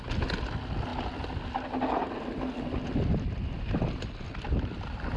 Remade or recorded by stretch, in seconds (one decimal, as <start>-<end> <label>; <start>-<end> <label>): 0.0-5.2 recorded